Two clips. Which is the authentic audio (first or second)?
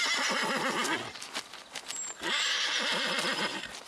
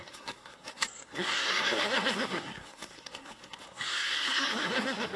first